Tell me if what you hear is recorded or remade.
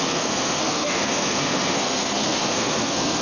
remade